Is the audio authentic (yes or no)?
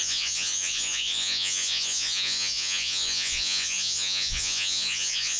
no